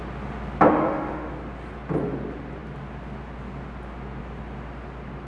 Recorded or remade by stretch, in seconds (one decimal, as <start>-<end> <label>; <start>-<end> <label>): 0.0-0.7 recorded; 0.7-1.3 remade; 1.3-5.3 recorded

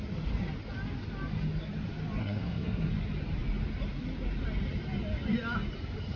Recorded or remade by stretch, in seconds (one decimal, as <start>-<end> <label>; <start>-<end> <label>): 0.0-2.2 recorded; 2.2-2.9 remade; 2.9-6.2 recorded

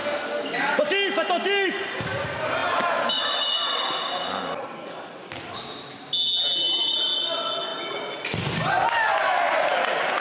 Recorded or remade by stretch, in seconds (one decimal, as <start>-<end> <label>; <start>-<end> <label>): 0.0-10.2 recorded

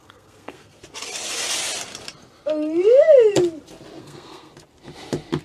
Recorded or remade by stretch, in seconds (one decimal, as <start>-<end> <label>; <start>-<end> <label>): 0.0-0.8 remade; 0.8-4.0 recorded; 4.0-4.5 remade; 4.5-5.4 recorded